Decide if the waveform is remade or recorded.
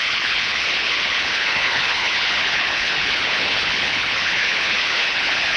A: remade